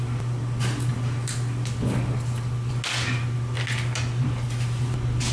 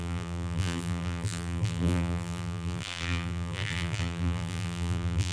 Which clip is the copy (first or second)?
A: second